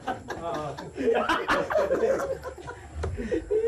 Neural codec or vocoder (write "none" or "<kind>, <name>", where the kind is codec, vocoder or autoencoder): none